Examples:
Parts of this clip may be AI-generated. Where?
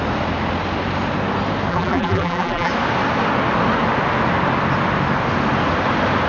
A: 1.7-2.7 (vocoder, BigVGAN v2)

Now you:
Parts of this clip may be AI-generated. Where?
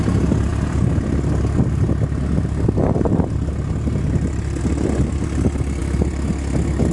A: none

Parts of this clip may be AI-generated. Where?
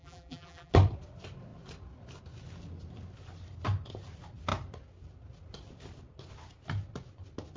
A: 0.0-0.7 (vocoder, BigVGAN v2)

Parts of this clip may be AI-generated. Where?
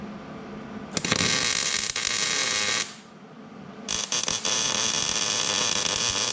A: 2.4-5.8 (vocoder, BigVGAN v2)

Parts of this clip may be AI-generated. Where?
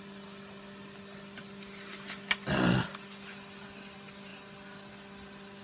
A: none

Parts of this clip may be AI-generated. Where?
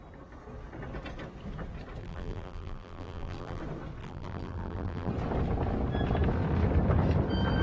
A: 2.0-3.6 (vocoder, BigVGAN v2); 4.0-5.1